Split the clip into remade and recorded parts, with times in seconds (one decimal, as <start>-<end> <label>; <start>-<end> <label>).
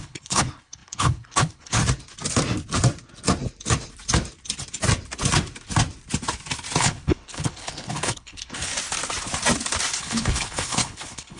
0.0-1.8 remade; 1.8-6.8 recorded; 6.8-8.7 remade; 8.7-10.0 recorded; 10.0-11.4 remade